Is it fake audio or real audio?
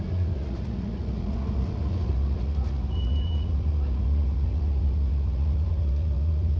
fake